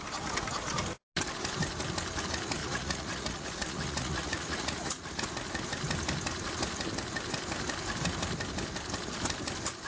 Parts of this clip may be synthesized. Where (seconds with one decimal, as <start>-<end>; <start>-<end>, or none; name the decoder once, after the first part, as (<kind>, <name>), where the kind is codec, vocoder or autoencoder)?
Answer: 2.6-5.1 (vocoder, Vocos)

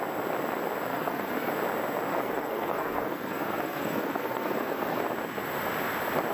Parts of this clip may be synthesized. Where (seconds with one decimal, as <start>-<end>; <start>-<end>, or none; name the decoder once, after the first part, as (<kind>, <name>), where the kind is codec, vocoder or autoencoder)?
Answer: 0.9-1.5 (codec, SNAC); 2.1-5.0

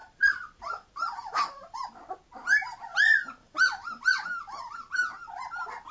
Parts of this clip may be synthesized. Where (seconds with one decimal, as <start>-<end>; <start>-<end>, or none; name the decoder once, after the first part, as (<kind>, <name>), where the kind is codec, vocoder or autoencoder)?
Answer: 0.0-1.8 (vocoder, BigVGAN v2); 2.9-4.8

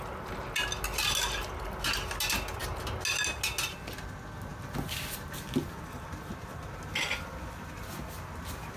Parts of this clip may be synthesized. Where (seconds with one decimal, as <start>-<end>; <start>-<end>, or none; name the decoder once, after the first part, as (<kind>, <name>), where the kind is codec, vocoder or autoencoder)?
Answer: none

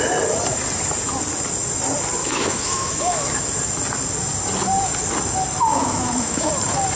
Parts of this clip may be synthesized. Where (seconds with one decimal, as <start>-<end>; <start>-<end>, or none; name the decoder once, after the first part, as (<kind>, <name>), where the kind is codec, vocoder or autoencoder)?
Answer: 2.2-3.2 (autoencoder, DAC-VAE); 5.7-6.5